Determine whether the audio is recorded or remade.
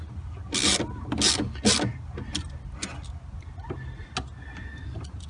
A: recorded